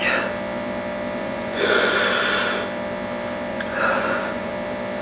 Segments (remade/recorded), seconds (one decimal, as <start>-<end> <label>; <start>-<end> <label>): 0.0-1.2 recorded; 1.2-2.0 remade; 2.0-3.5 recorded; 3.5-4.5 remade; 4.5-5.0 recorded